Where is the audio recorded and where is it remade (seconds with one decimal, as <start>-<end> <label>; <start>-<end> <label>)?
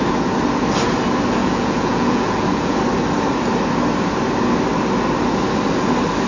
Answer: 0.0-1.4 recorded; 1.4-2.8 remade; 2.8-6.3 recorded